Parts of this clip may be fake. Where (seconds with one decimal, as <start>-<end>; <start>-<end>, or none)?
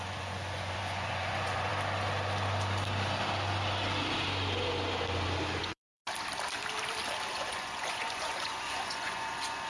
0.0-1.7; 5.6-6.0; 7.3-9.7